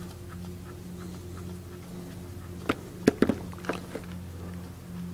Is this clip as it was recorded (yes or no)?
yes